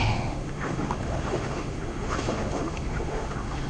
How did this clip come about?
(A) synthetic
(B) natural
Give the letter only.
A